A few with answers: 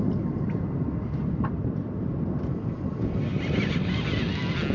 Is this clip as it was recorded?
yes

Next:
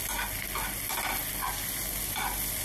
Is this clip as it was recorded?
yes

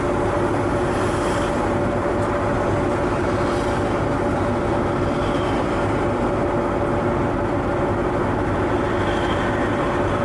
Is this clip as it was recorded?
yes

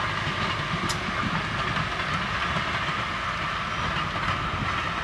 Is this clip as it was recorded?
yes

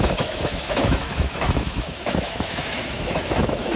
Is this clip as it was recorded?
no